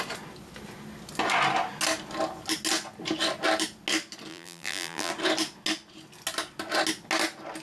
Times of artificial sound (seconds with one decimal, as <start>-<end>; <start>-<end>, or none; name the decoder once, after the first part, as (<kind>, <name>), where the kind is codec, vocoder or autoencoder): 4.3-5.1 (vocoder, BigVGAN v2)